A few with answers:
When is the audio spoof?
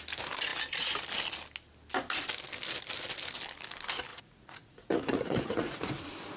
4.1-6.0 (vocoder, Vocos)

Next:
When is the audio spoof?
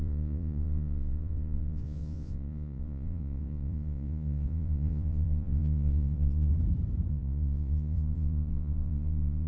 0.0-6.5 (vocoder, Vocos); 7.1-9.5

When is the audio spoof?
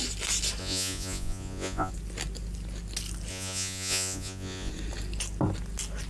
0.6-1.9 (vocoder, Vocos); 3.3-4.7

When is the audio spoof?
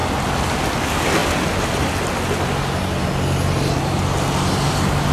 none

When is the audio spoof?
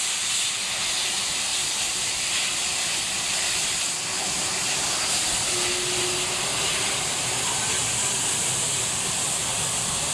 none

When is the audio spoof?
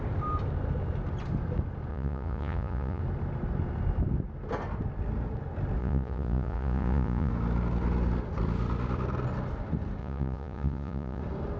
1.9-3.0 (vocoder, Vocos); 5.8-7.3; 10.0-11.2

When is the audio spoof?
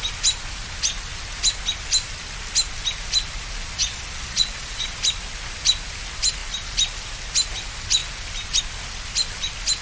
3.8-5.0 (vocoder, Vocos)